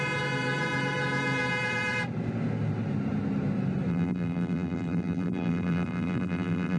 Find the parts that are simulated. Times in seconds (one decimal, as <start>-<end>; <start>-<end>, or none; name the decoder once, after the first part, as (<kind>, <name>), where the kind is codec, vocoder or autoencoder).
3.9-6.8 (vocoder, BigVGAN v2)